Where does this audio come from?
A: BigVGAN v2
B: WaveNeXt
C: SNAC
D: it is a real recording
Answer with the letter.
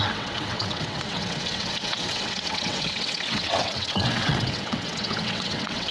B